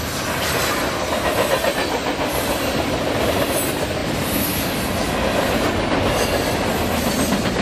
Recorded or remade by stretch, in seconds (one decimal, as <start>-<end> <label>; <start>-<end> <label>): 0.0-7.6 recorded